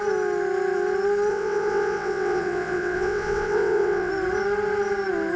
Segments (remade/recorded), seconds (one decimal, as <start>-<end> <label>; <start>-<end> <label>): 0.0-1.3 recorded; 1.3-4.1 remade; 4.1-5.4 recorded